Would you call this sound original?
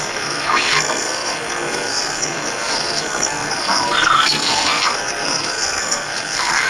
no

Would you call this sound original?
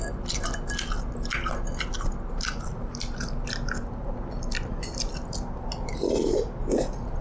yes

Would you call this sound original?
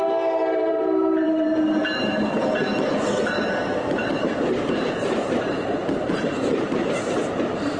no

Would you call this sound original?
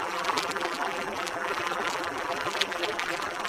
no